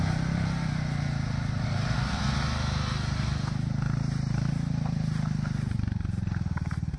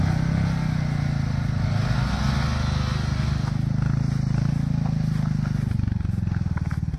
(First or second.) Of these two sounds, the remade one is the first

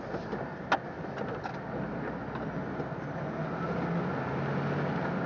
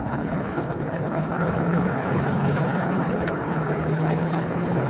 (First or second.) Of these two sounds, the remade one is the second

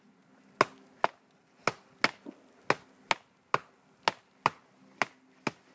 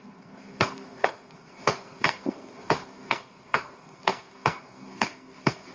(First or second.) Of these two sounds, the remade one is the second